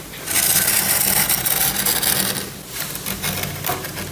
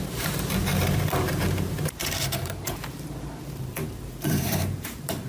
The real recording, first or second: first